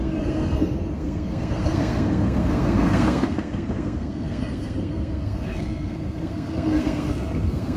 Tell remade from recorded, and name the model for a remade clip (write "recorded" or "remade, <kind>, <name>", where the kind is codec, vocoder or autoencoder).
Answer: remade, codec, SNAC